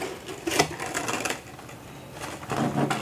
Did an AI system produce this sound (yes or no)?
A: no